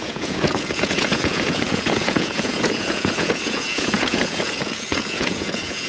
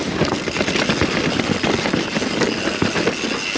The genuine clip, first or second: second